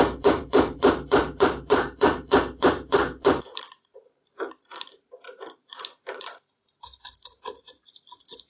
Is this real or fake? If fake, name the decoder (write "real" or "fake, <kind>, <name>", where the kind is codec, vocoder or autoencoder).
fake, vocoder, BigVGAN v2